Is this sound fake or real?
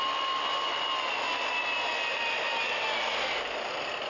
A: real